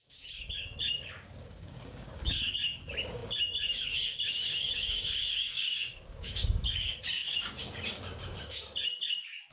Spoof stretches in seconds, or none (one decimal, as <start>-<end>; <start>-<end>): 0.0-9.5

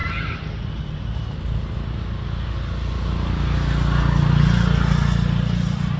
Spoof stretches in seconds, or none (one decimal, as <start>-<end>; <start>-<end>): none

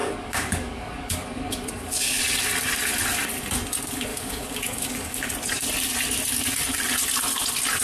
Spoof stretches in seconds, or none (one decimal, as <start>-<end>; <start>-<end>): 0.0-2.2; 4.1-5.3

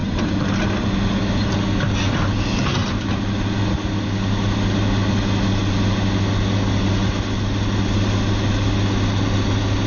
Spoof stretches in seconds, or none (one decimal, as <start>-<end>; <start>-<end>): none

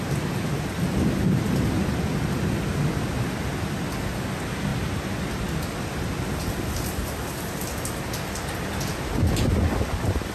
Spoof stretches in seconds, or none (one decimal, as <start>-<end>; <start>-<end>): none

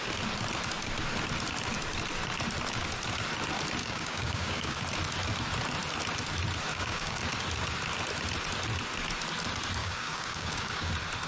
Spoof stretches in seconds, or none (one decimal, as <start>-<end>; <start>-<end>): 3.8-4.8; 6.7-7.2; 9.8-10.9

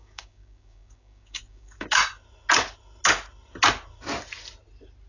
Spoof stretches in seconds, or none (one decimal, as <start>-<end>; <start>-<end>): 0.0-2.0

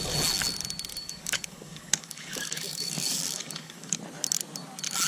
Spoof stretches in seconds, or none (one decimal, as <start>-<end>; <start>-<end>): 0.9-4.0